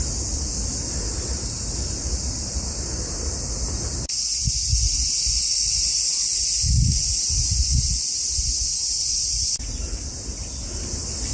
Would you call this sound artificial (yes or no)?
no